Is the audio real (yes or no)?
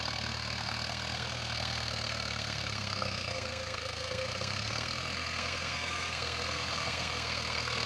no